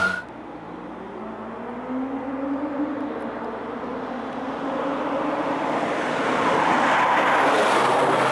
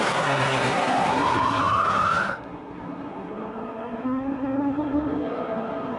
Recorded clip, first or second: first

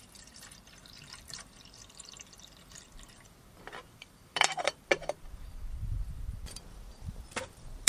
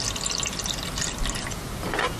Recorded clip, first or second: second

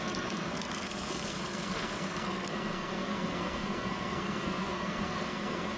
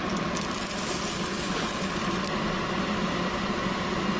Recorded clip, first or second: second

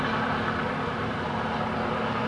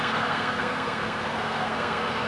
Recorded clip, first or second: first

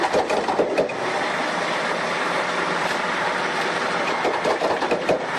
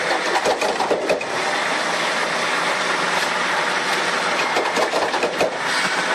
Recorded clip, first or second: second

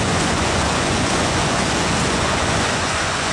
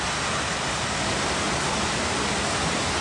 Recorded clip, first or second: second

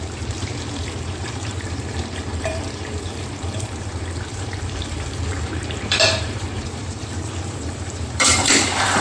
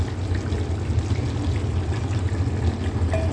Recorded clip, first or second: second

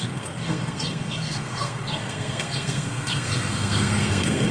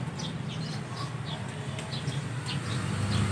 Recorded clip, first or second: second